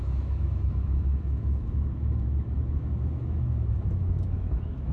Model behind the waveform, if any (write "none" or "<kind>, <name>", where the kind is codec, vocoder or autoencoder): autoencoder, DAC-VAE